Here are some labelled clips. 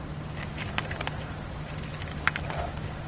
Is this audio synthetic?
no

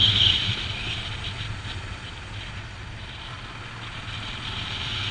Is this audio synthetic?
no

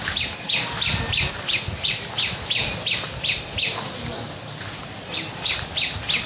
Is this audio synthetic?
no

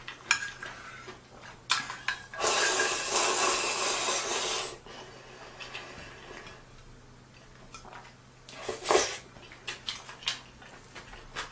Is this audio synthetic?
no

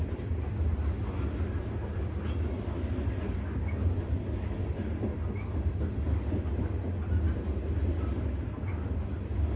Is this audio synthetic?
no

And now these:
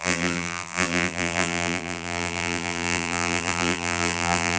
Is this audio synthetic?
yes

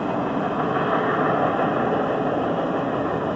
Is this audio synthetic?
no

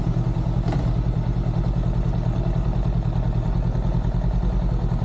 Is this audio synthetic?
no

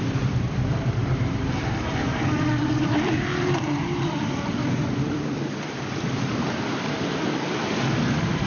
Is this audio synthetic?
yes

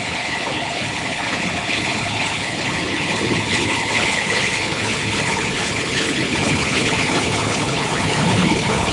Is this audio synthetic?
yes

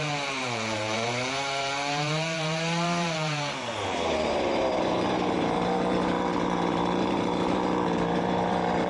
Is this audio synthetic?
yes